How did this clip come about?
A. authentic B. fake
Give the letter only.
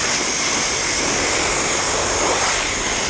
A